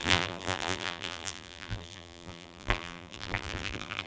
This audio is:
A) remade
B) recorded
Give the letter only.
A